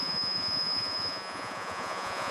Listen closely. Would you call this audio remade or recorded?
remade